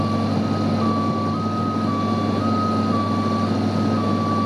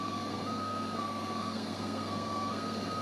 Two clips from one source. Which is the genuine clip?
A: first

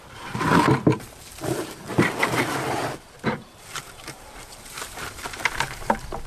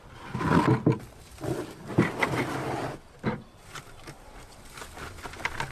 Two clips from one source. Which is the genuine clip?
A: second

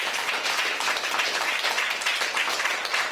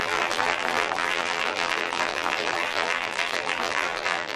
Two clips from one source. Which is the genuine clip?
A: first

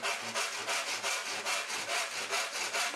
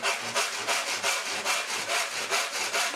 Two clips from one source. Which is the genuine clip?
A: first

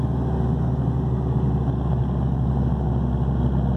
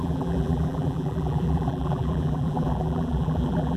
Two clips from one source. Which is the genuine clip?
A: first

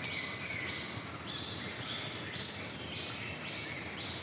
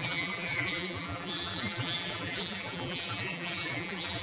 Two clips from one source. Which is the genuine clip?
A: first